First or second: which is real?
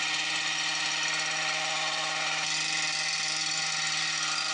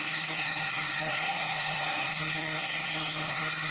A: first